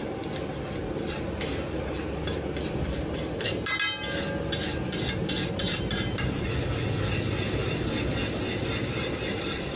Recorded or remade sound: recorded